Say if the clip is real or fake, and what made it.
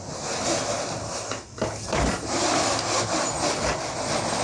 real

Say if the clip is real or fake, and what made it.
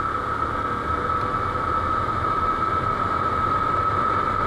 real